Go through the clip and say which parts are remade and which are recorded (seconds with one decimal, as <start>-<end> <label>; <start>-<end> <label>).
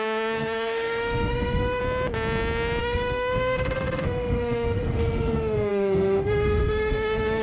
0.0-1.8 remade; 1.8-2.8 recorded; 2.8-7.4 remade